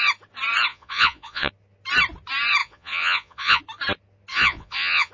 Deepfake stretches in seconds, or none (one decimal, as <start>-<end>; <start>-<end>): 0.7-1.5; 2.6-3.6; 4.3-5.1